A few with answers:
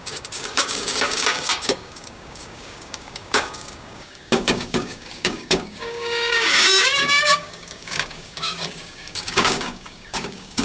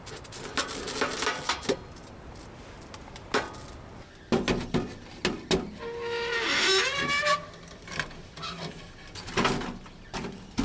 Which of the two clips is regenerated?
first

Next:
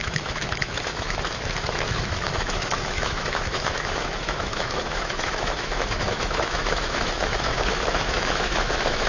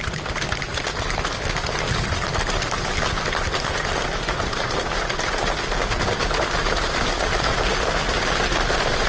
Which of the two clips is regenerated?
first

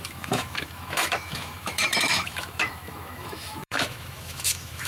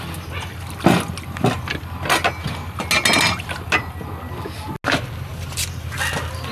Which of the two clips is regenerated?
first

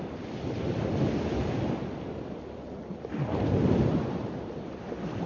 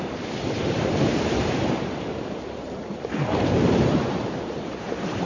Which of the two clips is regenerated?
second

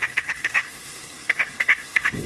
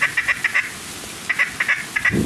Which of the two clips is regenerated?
first